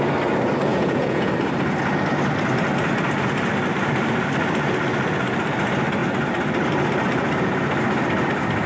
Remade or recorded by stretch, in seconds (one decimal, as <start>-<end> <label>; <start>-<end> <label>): 0.0-0.7 recorded; 0.7-1.3 remade; 1.3-8.7 recorded